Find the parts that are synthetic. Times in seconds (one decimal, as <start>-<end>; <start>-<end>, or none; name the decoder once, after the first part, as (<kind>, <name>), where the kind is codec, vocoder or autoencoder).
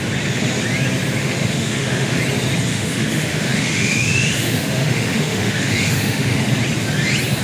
1.2-2.2 (autoencoder, DAC-VAE); 2.7-6.5